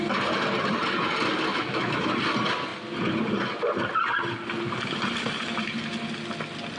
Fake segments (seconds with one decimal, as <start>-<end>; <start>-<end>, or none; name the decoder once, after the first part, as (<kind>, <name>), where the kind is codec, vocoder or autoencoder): 1.5-2.1 (autoencoder, DAC-VAE)